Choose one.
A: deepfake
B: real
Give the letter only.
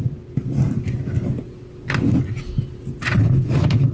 B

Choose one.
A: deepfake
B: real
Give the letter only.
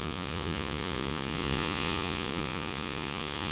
A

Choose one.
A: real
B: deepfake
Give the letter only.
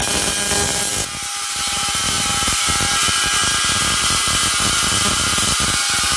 A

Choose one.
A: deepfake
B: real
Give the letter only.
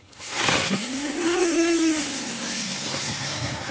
A